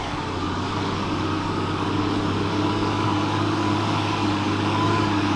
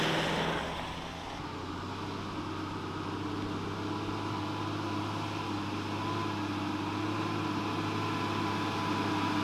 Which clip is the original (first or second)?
second